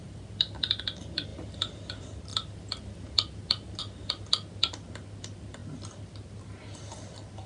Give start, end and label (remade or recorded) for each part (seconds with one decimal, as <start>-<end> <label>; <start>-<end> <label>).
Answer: 0.0-7.5 recorded